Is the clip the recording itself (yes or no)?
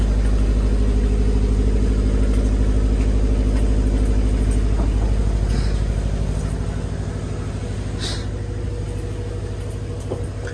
yes